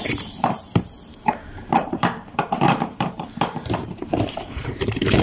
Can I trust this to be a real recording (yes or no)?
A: no